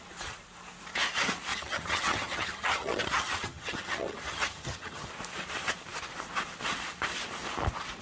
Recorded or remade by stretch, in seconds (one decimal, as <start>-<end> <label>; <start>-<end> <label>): 0.0-1.5 recorded; 1.5-5.1 remade; 5.1-8.0 recorded